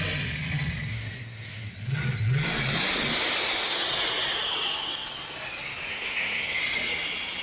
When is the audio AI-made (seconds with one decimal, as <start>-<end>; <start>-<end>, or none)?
0.9-1.7; 5.9-6.6